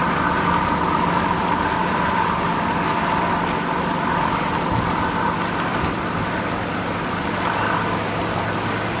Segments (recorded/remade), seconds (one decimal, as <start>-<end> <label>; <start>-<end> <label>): 0.0-9.0 recorded